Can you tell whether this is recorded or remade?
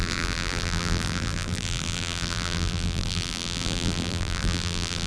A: remade